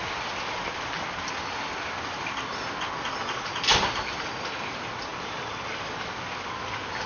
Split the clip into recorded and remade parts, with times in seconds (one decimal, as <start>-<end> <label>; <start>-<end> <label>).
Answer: 0.0-7.1 recorded